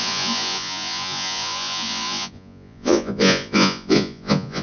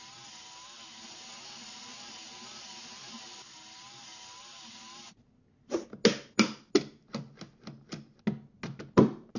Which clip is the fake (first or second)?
first